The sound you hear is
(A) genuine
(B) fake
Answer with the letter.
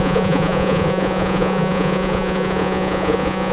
B